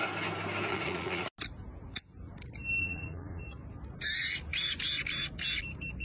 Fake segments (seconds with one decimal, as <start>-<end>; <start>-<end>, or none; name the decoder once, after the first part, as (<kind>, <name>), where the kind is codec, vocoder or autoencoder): 0.7-1.3 (vocoder, Vocos); 2.8-3.4